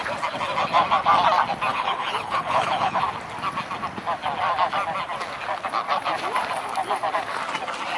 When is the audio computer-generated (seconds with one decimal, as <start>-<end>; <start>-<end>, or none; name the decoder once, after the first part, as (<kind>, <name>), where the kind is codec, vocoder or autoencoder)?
1.7-3.0 (codec, HILCodec)

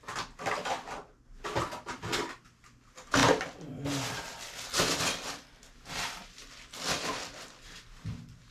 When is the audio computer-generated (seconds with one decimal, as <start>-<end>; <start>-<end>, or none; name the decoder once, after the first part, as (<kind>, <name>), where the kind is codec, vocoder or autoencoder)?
none